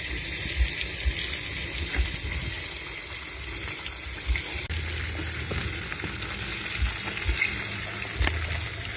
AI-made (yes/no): no